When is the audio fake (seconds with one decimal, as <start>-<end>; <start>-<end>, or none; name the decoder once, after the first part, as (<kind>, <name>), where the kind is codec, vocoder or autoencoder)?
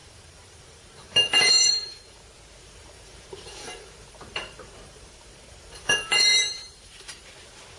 0.0-2.2 (vocoder, BigVGAN v2); 2.6-7.3